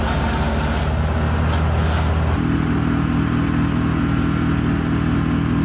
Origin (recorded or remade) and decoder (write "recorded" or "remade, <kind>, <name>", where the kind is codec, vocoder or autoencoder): recorded